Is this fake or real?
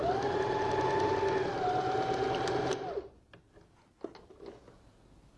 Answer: real